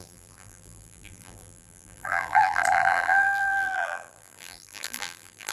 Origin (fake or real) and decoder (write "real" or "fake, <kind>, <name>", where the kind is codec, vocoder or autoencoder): fake, vocoder, BigVGAN v2